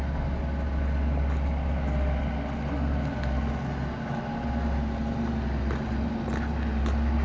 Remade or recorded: recorded